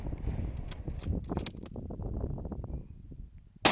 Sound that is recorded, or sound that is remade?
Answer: recorded